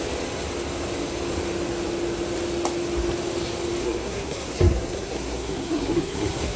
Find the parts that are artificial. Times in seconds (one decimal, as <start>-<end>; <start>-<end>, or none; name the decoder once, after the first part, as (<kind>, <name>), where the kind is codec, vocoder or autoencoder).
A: 3.8-6.6 (codec, SNAC)